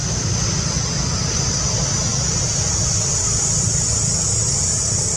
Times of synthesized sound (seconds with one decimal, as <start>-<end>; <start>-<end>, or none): none